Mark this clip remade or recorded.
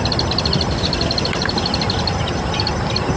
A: recorded